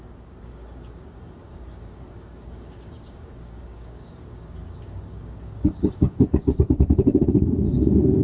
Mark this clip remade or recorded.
remade